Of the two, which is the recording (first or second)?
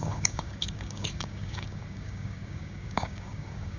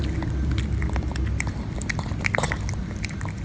second